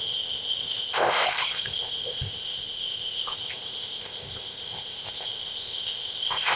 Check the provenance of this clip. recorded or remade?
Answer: remade